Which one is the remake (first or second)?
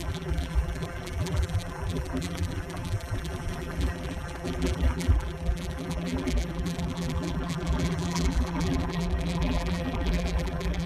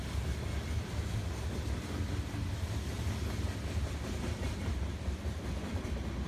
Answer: first